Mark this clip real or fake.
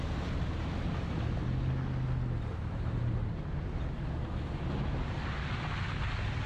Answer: real